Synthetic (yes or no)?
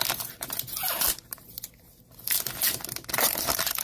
no